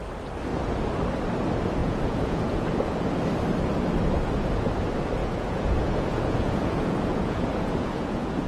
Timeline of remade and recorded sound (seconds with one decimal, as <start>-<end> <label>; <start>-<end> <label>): 0.0-1.8 recorded; 1.8-3.2 remade; 3.2-5.2 recorded; 5.2-8.5 remade